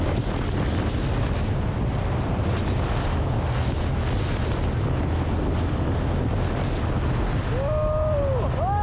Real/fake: real